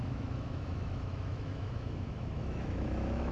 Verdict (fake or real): fake